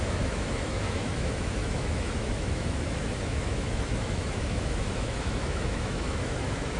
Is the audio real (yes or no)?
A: no